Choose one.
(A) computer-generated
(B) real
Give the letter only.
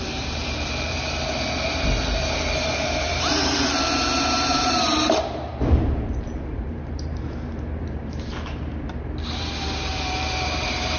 A